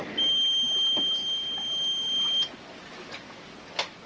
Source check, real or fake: real